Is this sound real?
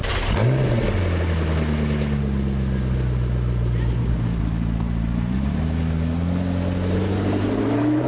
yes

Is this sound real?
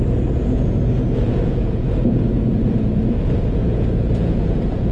no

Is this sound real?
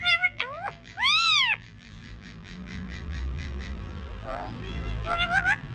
no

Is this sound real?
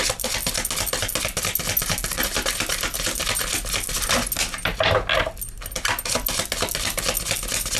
yes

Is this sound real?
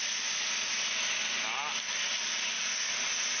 yes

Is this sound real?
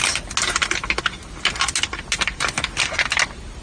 yes